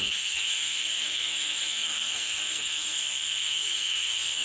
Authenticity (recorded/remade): remade